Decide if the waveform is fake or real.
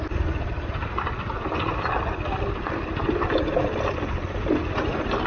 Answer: real